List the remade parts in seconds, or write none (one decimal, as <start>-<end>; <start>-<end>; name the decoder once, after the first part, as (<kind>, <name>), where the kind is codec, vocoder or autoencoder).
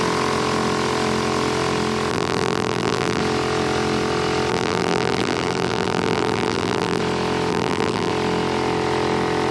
2.1-3.2 (vocoder, BigVGAN v2); 4.5-7.0; 7.5-8.1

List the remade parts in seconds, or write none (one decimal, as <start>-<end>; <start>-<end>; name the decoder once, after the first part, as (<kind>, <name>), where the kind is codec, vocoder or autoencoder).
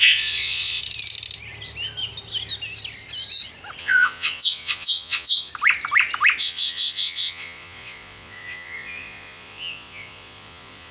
0.0-0.8 (vocoder, Vocos); 3.8-5.5; 6.4-10.9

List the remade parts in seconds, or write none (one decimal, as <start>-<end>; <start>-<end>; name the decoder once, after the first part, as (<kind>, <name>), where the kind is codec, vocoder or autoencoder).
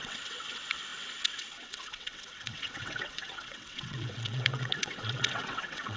0.0-6.0 (vocoder, WaveNeXt)